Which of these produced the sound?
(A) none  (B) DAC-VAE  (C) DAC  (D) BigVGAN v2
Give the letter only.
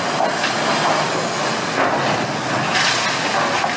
A